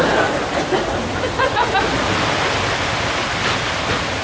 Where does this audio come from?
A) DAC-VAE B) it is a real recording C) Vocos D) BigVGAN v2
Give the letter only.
B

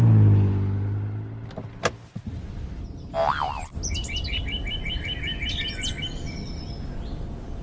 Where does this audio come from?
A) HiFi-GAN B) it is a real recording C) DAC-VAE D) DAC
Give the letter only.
B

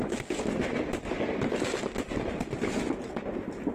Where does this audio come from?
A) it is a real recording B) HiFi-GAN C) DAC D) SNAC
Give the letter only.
A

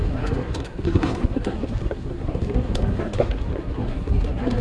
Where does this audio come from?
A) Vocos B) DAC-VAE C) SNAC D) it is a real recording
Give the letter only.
C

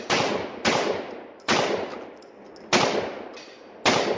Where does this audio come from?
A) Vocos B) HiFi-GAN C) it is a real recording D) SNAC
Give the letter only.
C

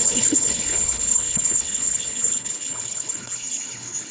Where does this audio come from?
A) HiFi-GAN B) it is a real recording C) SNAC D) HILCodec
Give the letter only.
D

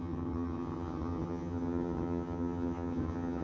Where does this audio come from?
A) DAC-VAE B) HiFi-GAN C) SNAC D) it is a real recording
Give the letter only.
B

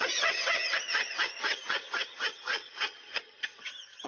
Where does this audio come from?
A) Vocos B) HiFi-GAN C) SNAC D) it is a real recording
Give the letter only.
B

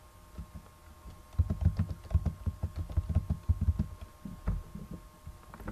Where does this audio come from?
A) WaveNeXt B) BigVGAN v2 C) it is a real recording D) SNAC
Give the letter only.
C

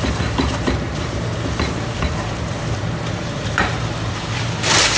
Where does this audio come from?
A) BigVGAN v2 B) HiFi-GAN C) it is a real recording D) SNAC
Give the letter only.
A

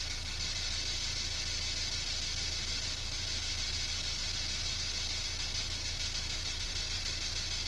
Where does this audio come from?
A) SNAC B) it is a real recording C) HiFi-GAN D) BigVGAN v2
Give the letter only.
B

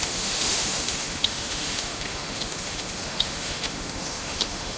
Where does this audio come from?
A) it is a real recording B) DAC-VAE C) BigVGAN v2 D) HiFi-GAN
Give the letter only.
B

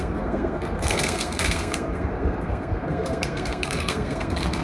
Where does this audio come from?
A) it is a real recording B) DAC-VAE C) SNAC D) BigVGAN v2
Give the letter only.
C